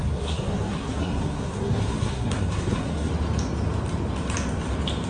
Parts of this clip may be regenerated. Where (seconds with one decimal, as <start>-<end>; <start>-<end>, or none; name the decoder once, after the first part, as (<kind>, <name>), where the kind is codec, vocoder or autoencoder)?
0.0-3.1 (codec, SNAC)